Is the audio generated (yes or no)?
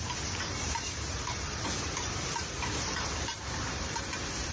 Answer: yes